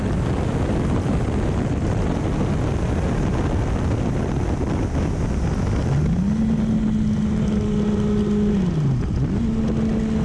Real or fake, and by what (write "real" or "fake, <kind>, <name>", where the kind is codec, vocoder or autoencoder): real